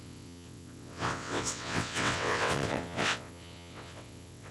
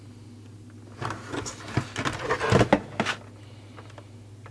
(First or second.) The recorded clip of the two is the second